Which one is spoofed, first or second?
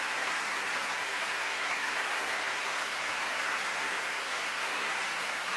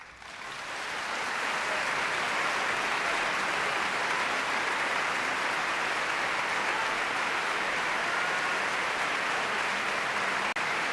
first